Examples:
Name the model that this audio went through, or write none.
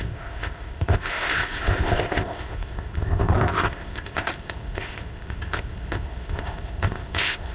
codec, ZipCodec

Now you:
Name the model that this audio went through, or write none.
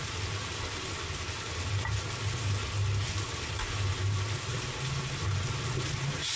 none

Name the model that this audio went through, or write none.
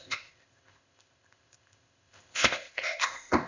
codec, ZipCodec